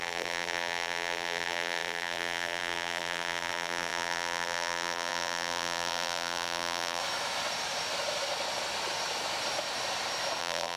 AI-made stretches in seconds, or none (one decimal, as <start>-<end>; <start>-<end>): 0.0-7.0; 10.4-10.8